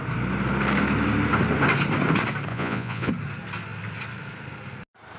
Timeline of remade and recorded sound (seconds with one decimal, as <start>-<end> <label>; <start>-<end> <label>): 0.0-2.5 recorded; 2.5-3.1 remade; 3.1-5.2 recorded